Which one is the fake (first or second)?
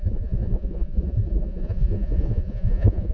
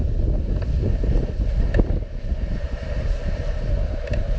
first